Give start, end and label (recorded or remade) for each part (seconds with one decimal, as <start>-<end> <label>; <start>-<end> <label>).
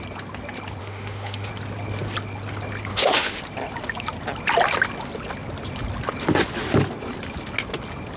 0.0-0.8 recorded; 0.8-1.5 remade; 1.5-2.9 recorded; 2.9-3.4 remade; 3.4-8.2 recorded